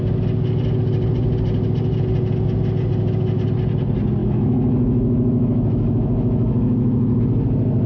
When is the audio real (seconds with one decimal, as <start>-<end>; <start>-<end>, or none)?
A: 0.0-4.2; 7.2-7.9